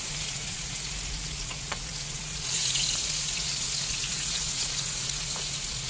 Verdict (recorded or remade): remade